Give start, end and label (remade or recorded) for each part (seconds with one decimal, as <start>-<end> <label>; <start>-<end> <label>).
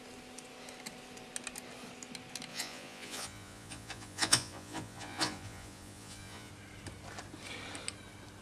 0.0-2.5 recorded; 2.5-6.5 remade; 6.5-8.4 recorded